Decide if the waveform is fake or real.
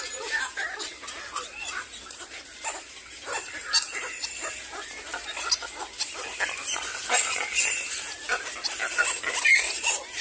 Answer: real